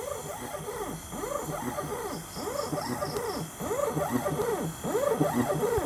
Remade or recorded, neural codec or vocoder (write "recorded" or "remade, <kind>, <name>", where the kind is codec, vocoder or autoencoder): recorded